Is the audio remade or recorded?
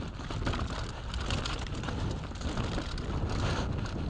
recorded